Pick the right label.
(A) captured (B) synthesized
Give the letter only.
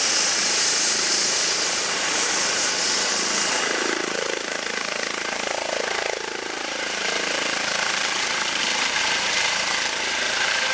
B